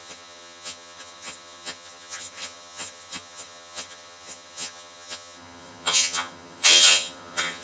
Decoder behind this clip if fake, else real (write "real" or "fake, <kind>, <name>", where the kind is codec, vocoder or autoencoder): fake, vocoder, HiFi-GAN